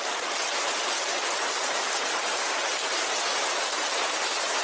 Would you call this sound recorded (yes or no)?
yes